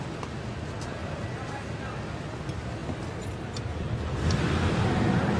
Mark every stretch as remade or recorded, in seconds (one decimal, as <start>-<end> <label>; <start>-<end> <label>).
0.0-5.4 recorded